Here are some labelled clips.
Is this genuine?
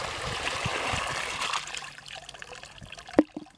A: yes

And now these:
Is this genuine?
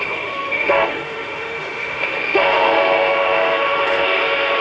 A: no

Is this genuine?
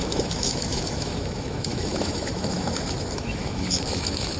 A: no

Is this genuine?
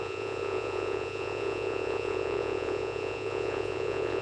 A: no